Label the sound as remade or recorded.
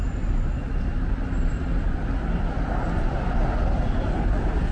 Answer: recorded